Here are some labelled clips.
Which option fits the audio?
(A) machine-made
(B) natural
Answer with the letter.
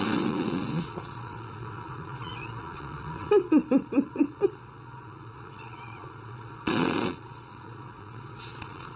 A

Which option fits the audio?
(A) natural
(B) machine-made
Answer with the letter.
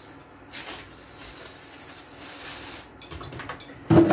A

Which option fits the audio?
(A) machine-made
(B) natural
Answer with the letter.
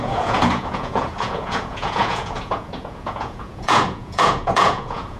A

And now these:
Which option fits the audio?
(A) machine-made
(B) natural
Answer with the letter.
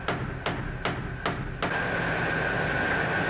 B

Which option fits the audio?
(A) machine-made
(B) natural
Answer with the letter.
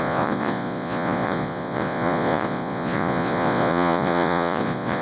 A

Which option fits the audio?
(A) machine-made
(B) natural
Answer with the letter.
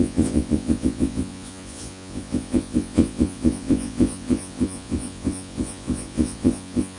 A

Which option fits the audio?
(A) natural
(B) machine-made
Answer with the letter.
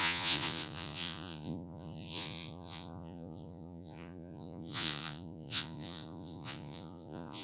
B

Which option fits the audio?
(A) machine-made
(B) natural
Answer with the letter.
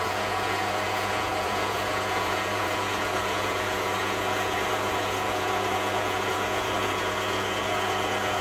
A